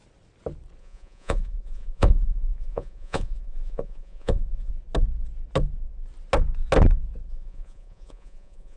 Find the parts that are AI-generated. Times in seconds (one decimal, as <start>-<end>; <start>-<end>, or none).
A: 0.8-4.7; 7.3-8.8